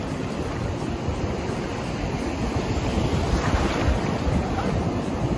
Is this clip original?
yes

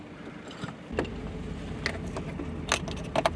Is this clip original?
yes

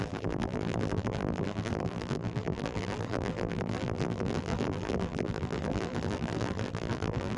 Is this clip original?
no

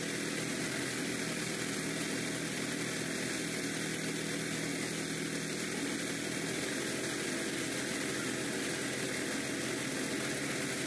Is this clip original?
yes